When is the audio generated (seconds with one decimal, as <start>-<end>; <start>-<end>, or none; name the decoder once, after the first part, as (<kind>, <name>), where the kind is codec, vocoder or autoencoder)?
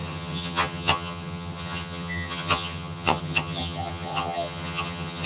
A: 0.0-5.3 (vocoder, HiFi-GAN)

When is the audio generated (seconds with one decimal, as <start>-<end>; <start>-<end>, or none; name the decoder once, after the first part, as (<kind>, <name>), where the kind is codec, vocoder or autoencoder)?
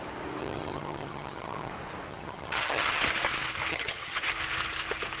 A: 0.4-1.7 (vocoder, HiFi-GAN); 2.1-3.0; 3.7-4.3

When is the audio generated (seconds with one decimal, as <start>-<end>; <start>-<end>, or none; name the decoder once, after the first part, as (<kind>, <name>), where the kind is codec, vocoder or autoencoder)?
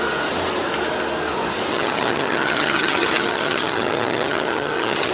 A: 1.7-5.1 (vocoder, HiFi-GAN)